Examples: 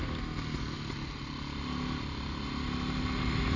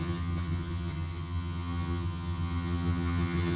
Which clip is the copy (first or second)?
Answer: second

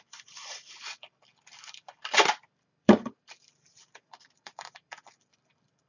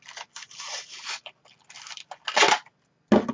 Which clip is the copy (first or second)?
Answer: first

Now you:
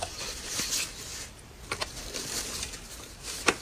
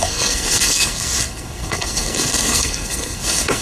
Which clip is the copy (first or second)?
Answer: second